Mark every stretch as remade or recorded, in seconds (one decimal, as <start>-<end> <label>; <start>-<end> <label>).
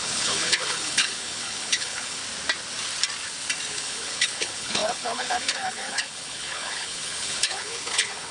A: 0.0-2.2 remade; 2.2-3.7 recorded; 3.7-8.3 remade